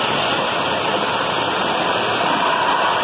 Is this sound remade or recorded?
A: recorded